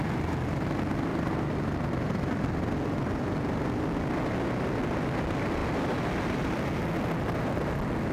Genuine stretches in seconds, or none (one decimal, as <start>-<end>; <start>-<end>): 0.0-1.1; 3.6-5.6; 6.7-8.1